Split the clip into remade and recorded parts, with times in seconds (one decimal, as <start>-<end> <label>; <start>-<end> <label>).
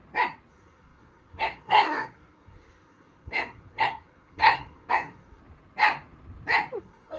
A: 0.0-0.5 recorded; 0.5-5.4 remade; 5.4-6.8 recorded; 6.8-7.2 remade